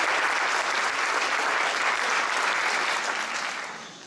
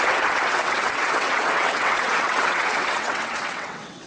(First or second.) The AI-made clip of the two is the second